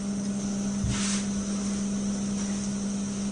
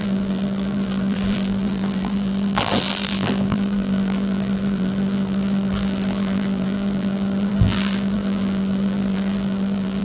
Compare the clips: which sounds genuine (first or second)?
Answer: first